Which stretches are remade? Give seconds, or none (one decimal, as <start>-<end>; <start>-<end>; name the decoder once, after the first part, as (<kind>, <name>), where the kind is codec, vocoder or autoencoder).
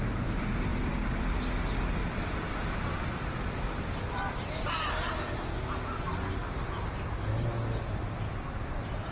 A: 0.7-1.4 (vocoder, BigVGAN v2); 2.0-5.2; 6.9-8.0